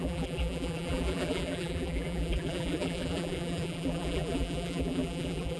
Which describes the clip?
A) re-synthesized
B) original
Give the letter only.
A